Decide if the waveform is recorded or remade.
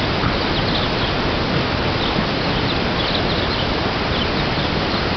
recorded